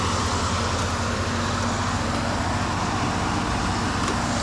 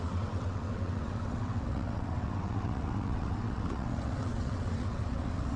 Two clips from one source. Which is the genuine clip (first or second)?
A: first